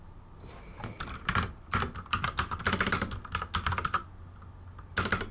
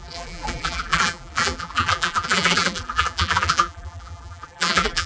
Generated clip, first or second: second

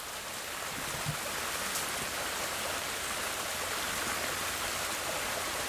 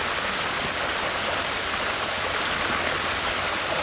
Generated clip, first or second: second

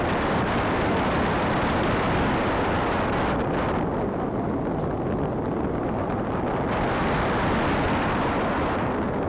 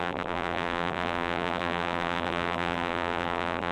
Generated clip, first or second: second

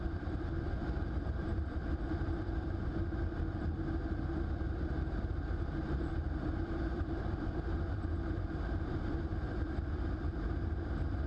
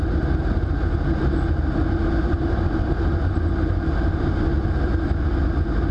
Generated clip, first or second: first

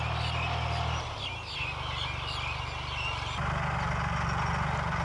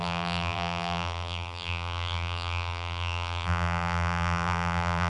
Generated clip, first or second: second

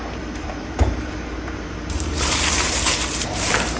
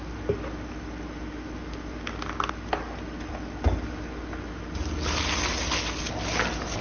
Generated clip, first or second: first